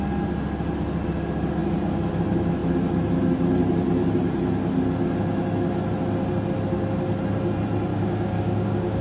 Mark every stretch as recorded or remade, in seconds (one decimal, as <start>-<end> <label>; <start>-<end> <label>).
0.0-7.9 recorded; 7.9-9.0 remade